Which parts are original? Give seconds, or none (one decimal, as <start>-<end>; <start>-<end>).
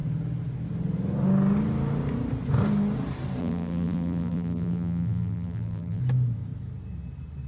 0.0-3.4; 6.0-7.5